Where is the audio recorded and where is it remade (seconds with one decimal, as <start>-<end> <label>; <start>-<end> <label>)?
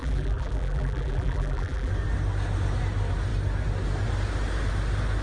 0.0-1.9 remade; 1.9-5.2 recorded